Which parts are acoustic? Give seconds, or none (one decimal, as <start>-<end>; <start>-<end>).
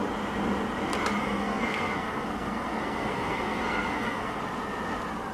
0.0-1.2; 4.4-5.3